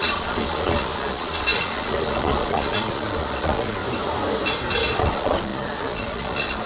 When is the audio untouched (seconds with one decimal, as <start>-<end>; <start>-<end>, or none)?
3.8-5.0